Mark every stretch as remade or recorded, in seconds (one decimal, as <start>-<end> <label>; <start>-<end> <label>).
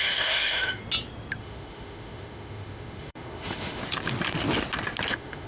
0.0-0.8 remade; 0.8-1.4 recorded; 1.4-3.8 remade; 3.8-5.1 recorded; 5.1-5.5 remade